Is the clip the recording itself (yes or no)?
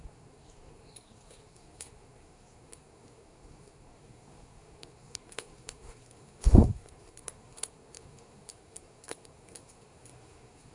no